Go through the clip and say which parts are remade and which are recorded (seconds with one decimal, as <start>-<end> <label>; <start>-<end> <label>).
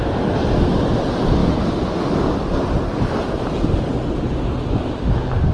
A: 0.0-5.5 recorded